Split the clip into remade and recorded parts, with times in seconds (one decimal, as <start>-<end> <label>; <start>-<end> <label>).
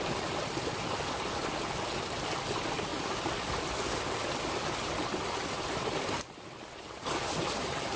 0.0-8.0 recorded